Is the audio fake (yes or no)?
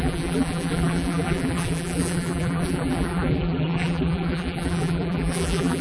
yes